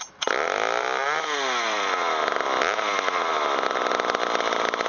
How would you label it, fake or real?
real